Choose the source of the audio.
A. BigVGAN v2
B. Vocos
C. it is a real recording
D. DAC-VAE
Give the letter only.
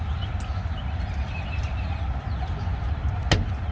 C